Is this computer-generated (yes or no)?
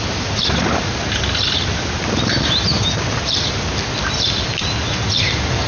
no